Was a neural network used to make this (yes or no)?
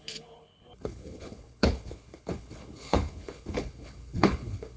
yes